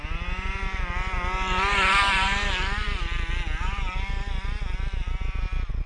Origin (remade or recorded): recorded